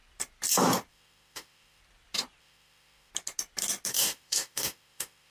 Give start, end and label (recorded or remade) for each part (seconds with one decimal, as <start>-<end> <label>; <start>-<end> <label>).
0.0-0.9 recorded; 0.9-1.8 remade; 1.8-2.4 recorded; 2.4-3.1 remade; 3.1-3.9 recorded; 3.9-5.3 remade